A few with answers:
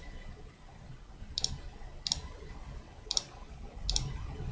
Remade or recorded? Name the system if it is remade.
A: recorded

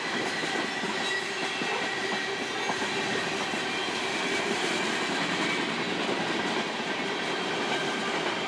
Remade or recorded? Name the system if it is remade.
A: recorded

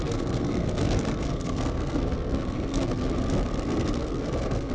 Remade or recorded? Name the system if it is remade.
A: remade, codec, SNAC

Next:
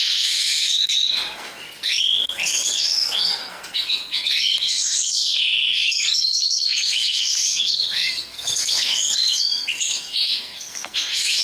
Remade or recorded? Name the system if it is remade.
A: remade, codec, SNAC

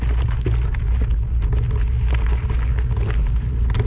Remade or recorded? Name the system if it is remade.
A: recorded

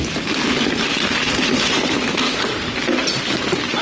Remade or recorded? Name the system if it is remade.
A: recorded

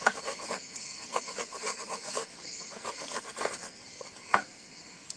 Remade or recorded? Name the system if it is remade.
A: remade, codec, SNAC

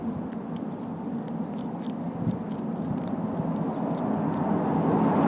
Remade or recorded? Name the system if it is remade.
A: recorded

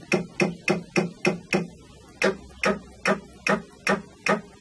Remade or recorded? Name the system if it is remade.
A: recorded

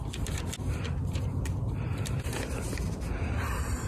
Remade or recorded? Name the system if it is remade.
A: recorded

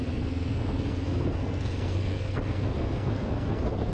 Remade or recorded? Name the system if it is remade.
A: remade, codec, SNAC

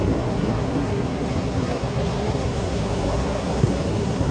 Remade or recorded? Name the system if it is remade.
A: remade, codec, SNAC